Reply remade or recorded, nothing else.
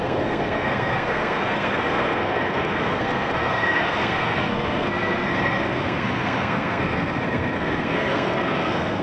remade